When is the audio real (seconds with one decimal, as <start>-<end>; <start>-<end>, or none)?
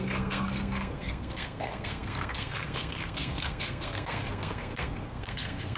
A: none